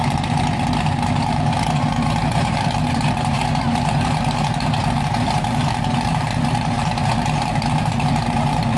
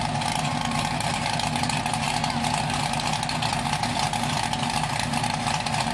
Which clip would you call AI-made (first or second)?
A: first